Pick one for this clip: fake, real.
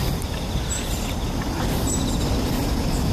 real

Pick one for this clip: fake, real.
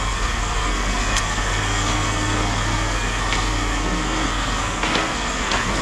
fake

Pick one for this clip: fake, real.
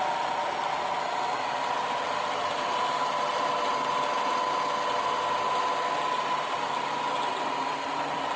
real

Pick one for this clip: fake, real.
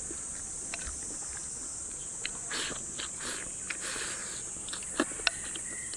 real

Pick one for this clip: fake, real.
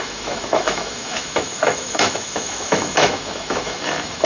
fake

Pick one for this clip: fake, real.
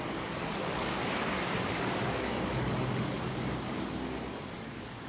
fake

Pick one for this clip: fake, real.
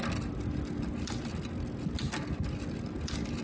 real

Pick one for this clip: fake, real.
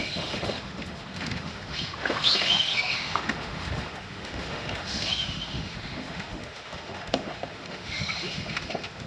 fake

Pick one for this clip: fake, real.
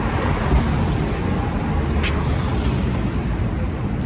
real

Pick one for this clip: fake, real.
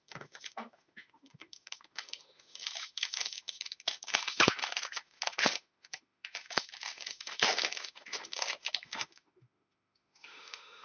fake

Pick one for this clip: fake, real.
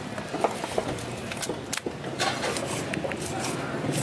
real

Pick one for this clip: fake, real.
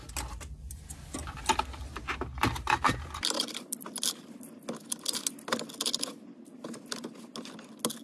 real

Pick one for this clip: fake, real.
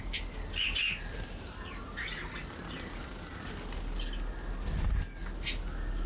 real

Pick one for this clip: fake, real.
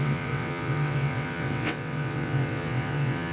fake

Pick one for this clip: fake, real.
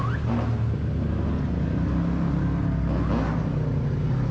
real